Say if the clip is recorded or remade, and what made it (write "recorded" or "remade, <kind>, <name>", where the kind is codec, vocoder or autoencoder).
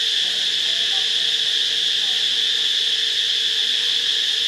recorded